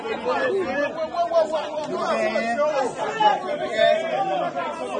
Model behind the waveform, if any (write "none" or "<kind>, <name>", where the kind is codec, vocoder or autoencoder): none